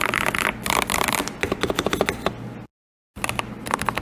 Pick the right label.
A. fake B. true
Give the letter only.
B